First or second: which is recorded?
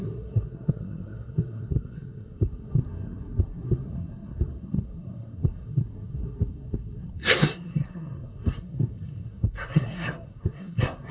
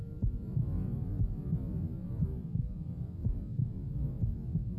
second